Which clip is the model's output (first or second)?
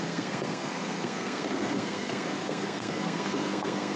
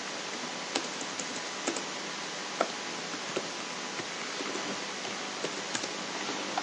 first